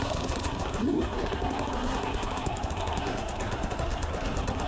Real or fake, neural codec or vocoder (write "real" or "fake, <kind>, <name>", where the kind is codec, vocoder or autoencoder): fake, codec, SNAC